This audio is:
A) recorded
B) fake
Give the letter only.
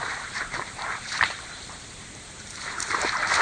B